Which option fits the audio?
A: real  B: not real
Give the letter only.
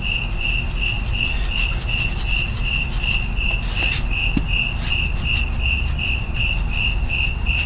A